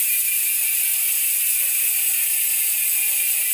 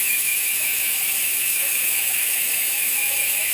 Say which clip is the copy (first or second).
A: second